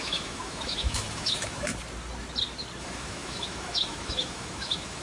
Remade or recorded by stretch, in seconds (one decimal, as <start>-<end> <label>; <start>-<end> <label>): 0.0-1.7 remade; 1.7-2.8 recorded; 2.8-5.0 remade